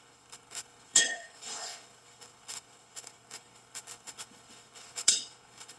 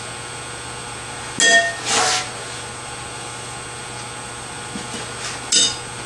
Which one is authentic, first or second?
second